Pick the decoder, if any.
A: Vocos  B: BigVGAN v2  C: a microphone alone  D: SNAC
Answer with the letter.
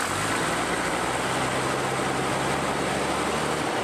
C